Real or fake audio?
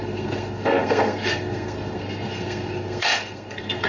fake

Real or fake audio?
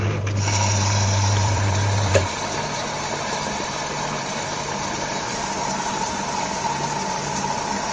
fake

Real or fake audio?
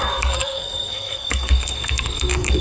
fake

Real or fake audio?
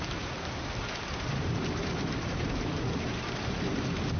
fake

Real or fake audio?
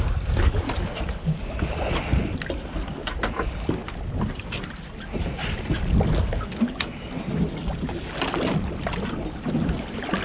real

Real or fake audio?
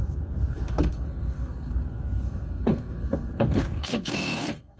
fake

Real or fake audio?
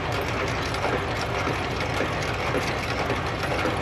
real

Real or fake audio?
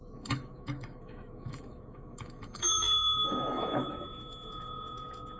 fake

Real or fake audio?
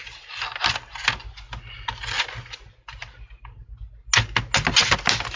real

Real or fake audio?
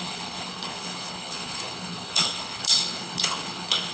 fake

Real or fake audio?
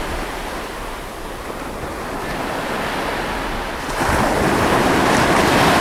real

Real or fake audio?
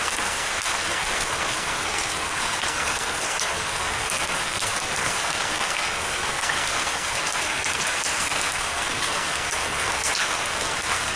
fake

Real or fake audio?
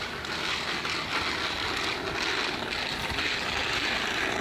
real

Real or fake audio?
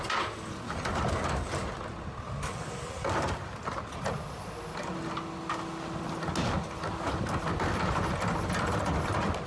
real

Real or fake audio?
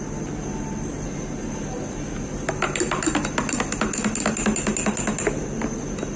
real